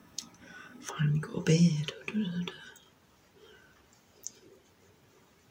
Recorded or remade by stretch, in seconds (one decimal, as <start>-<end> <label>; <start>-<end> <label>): 0.0-0.9 remade; 0.9-5.5 recorded